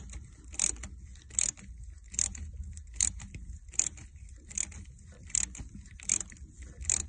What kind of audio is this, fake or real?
real